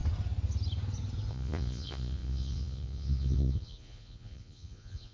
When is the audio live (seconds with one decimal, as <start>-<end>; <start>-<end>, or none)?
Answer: 0.0-1.3